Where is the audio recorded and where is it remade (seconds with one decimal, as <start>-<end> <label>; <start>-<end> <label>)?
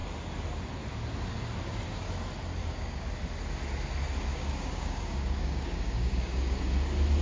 0.0-2.6 recorded; 2.6-3.1 remade; 3.1-4.3 recorded; 4.3-6.6 remade; 6.6-7.2 recorded